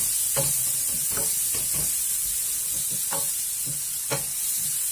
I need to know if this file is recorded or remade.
recorded